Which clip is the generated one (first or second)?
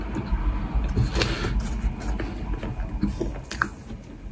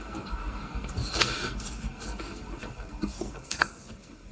second